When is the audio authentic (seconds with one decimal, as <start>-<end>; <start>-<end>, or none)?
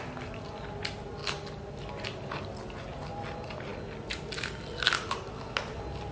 0.0-6.1